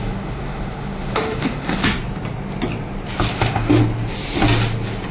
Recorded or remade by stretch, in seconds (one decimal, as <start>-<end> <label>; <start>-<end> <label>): 0.0-1.8 remade; 1.8-3.3 recorded; 3.3-3.8 remade; 3.8-5.1 recorded